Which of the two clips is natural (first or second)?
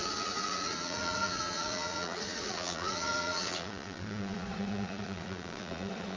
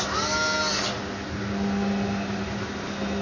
second